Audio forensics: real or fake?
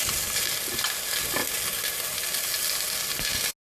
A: real